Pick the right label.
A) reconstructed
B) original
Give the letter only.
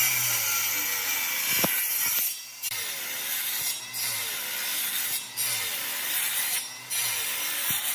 B